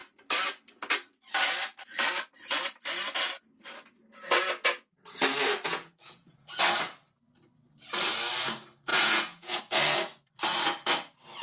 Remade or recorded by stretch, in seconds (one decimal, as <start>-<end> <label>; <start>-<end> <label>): 0.0-5.7 recorded; 5.7-6.6 remade; 6.6-8.9 recorded; 8.9-9.6 remade; 9.6-11.4 recorded